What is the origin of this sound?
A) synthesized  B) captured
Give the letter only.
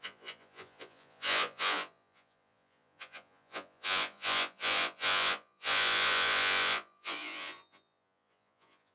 A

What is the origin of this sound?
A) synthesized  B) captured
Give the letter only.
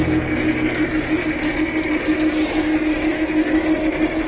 B